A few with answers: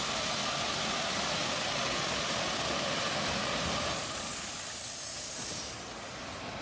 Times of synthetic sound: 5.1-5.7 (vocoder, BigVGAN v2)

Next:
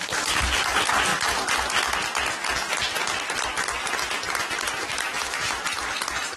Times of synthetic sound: 4.9-5.6 (autoencoder, DAC-VAE)

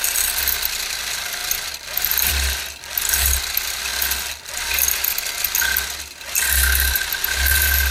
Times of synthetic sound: none

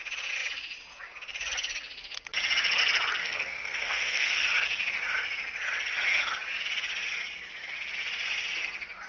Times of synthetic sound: 3.2-4.4 (codec, SNAC)

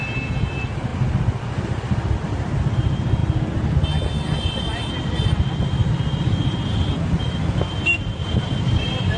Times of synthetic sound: none

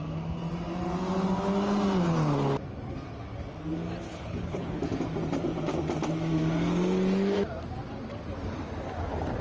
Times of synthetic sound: 4.1-4.8 (codec, HILCodec)